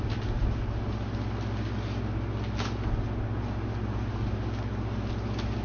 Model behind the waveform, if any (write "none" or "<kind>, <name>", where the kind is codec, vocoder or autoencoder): none